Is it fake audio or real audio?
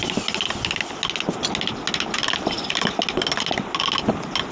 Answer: real